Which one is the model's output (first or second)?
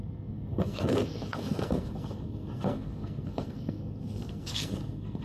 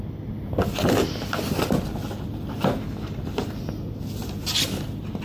first